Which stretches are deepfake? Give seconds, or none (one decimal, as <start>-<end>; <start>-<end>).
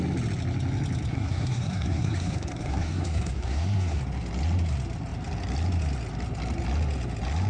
1.1-4.0